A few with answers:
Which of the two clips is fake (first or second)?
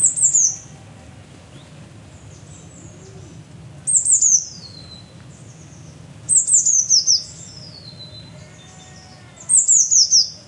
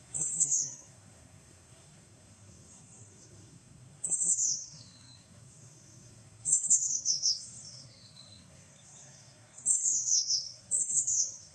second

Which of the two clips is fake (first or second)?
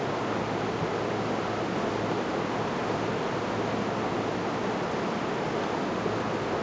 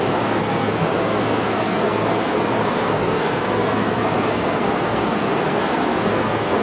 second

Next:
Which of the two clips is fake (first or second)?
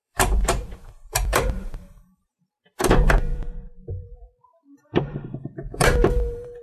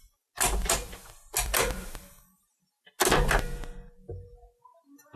first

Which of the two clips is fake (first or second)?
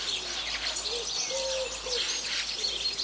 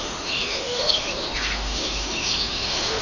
second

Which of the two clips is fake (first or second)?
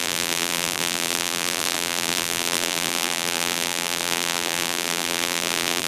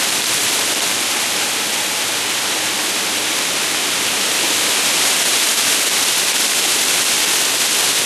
first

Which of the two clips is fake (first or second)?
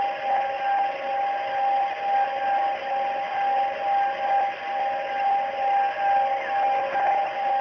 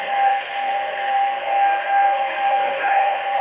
second